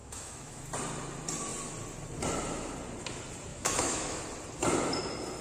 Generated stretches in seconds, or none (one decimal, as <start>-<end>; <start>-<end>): 0.0-0.6; 3.5-4.2